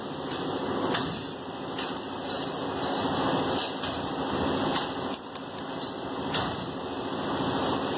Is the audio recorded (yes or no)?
yes